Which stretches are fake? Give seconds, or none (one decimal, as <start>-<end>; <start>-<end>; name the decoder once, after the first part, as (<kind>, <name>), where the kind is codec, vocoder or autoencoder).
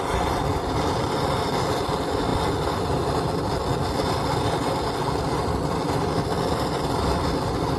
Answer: none